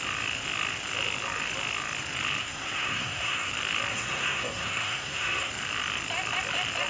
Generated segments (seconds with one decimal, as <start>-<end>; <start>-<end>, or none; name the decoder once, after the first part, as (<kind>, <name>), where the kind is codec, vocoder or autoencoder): 2.4-3.5 (codec, SNAC); 3.9-5.5